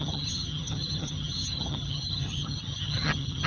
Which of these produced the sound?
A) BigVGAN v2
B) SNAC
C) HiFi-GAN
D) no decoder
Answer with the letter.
C